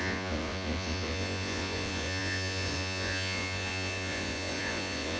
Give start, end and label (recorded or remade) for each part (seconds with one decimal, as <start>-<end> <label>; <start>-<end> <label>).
0.0-5.2 remade